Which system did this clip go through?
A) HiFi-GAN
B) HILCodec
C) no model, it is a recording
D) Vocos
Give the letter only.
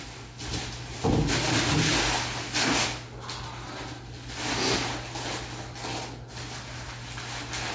C